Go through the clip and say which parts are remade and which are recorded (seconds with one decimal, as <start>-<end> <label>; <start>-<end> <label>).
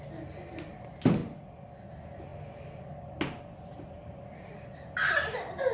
0.0-5.7 recorded